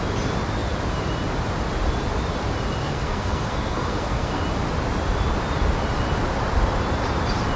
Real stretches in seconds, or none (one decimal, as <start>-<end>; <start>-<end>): 0.0-2.8; 4.4-7.6